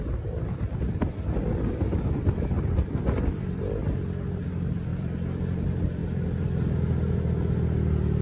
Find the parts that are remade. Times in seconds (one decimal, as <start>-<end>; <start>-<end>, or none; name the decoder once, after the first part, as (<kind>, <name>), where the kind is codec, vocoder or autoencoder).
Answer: 0.0-3.8 (vocoder, BigVGAN v2); 4.5-6.0